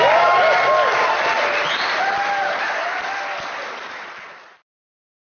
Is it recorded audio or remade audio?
recorded